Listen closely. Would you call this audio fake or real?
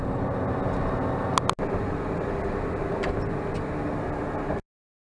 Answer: real